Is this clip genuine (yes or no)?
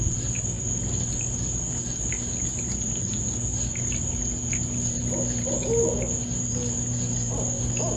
yes